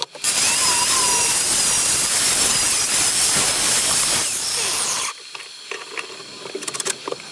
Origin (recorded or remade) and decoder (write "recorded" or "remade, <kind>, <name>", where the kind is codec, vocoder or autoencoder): recorded